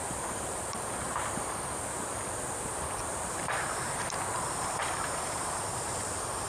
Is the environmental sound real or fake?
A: fake